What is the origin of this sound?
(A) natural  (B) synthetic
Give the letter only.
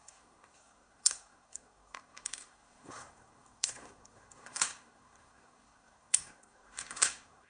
B